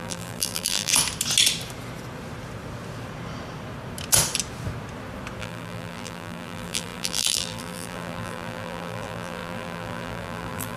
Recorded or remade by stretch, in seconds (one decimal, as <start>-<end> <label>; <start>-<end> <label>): 0.0-0.9 remade; 0.9-5.4 recorded; 5.4-10.8 remade